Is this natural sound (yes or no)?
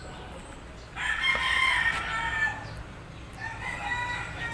yes